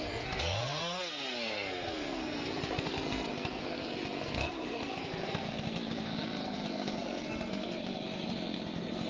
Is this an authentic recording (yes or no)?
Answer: no